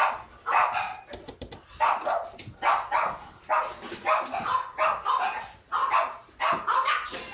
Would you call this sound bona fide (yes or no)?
yes